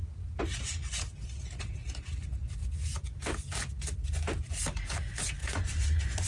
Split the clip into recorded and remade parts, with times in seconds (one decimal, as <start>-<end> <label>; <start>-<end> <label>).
0.0-5.4 recorded; 5.4-6.3 remade